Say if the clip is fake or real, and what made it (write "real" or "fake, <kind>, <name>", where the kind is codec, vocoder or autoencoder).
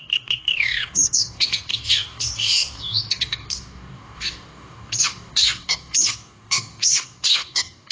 fake, codec, DAC